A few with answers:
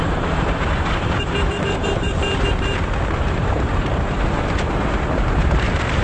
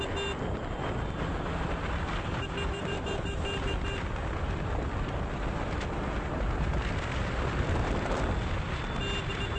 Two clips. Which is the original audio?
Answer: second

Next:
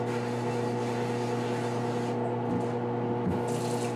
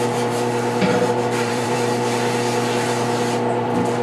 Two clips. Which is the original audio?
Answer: first